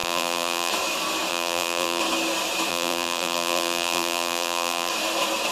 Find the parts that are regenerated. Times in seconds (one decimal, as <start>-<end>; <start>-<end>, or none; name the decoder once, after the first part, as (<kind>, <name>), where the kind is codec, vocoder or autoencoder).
0.0-0.7 (vocoder, BigVGAN v2); 1.3-2.0; 2.7-4.9